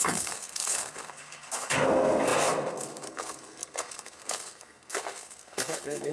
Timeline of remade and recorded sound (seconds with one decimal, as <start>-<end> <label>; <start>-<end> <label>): 0.0-6.1 remade

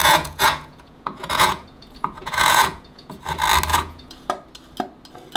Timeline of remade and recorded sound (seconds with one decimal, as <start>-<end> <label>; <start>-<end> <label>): 0.0-3.2 remade; 3.2-3.7 recorded; 3.7-4.3 remade; 4.3-5.4 recorded

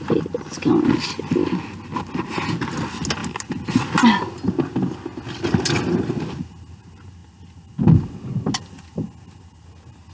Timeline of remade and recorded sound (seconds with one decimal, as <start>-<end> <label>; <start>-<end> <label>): 0.0-10.1 recorded

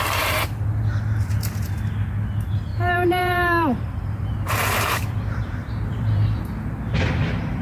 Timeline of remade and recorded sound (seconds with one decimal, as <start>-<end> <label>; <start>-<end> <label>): 0.0-2.7 recorded; 2.7-6.4 remade; 6.4-7.6 recorded

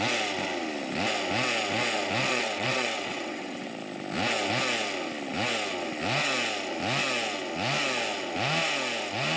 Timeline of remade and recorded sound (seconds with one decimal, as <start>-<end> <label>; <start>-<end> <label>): 0.0-2.3 recorded; 2.3-3.7 remade; 3.7-9.4 recorded